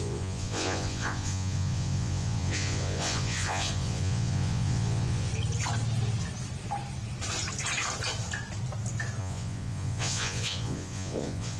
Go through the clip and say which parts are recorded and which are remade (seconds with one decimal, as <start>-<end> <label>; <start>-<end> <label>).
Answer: 0.0-5.3 remade; 5.3-9.2 recorded; 9.2-11.6 remade